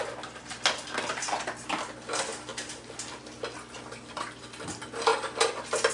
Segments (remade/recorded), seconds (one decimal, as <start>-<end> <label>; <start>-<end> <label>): 0.0-5.9 recorded